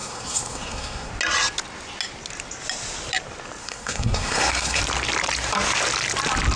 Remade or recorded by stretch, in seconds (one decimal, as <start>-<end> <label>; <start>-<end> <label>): 0.0-1.1 remade; 1.1-3.6 recorded; 3.6-4.8 remade; 4.8-6.6 recorded